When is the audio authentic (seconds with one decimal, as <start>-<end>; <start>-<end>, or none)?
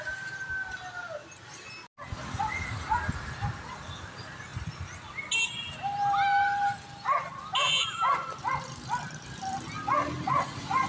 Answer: 0.0-10.9